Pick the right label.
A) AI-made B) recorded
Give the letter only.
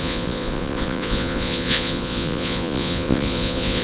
A